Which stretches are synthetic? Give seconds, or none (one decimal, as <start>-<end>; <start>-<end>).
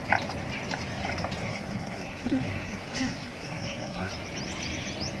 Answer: 1.4-4.1